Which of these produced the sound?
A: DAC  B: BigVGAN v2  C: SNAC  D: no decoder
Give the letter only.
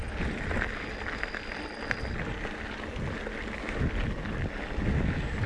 D